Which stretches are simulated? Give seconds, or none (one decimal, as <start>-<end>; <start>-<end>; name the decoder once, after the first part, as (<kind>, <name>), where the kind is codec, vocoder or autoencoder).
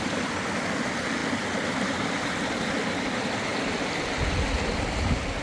none